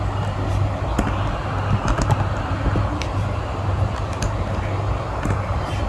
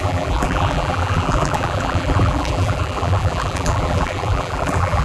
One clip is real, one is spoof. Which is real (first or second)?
first